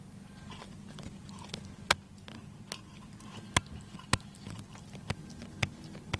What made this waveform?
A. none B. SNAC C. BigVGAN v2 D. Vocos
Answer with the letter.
A